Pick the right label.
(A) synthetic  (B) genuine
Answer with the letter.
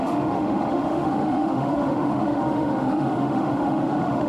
A